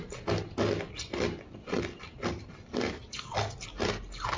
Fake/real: real